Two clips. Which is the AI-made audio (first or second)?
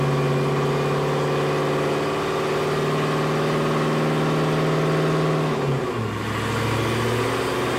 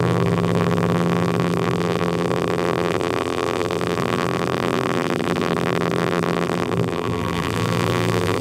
second